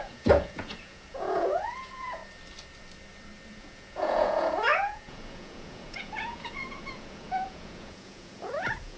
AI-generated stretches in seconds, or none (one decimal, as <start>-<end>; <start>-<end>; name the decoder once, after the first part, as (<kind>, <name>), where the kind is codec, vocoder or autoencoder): 0.0-2.2 (vocoder, Vocos); 3.5-9.0